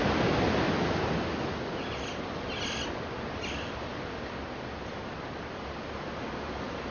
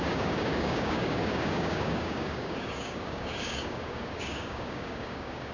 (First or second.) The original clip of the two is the first